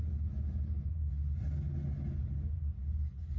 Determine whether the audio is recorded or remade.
recorded